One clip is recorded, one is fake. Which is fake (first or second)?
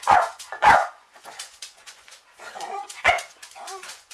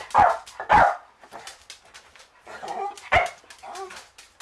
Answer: first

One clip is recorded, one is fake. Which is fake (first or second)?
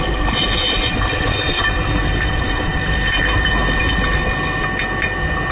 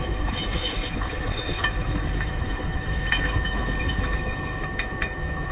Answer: second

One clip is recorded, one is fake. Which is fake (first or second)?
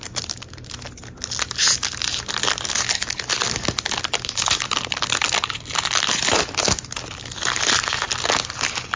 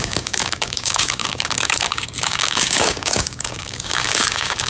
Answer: second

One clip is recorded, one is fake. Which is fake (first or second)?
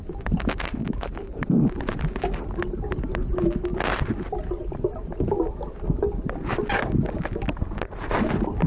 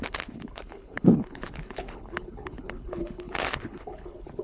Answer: second